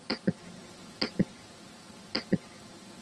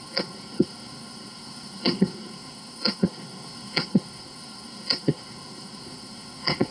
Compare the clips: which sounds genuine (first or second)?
first